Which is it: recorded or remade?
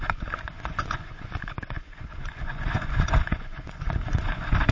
remade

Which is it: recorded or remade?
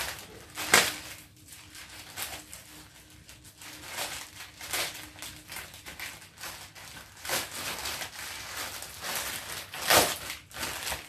recorded